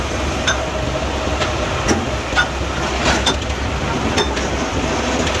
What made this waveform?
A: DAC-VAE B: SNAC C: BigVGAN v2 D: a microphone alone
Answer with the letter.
D